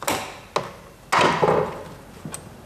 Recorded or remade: recorded